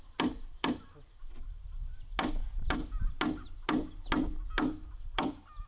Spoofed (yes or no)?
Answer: no